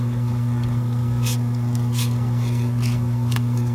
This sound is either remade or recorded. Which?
remade